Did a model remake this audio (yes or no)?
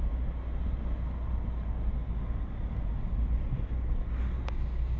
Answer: no